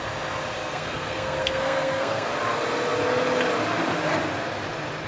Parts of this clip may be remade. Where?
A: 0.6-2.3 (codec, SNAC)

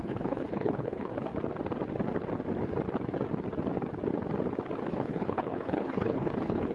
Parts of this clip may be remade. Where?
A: 0.0-1.3 (codec, HILCodec); 4.9-6.7

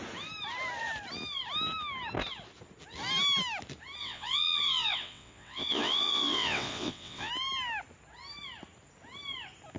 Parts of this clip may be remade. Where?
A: 4.0-7.3 (vocoder, WaveNeXt)

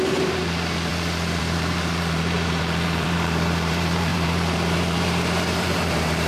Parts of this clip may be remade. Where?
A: 0.0-0.9 (vocoder, BigVGAN v2); 1.4-6.3

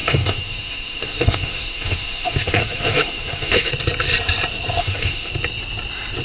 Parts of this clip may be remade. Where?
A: 0.0-3.7 (autoencoder, DAC-VAE); 4.8-5.3

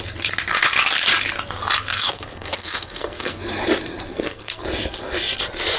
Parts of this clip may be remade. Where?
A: 1.9-3.4 (codec, SNAC); 4.1-4.6

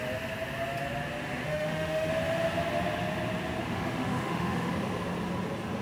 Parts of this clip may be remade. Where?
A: 1.4-2.1 (autoencoder, DAC-VAE); 3.6-4.7